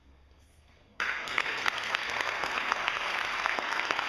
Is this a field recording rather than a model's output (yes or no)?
no